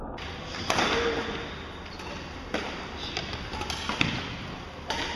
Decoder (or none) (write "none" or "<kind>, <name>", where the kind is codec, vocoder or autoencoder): none